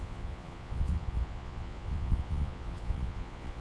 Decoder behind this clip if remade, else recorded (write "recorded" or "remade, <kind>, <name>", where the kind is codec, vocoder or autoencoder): remade, vocoder, Vocos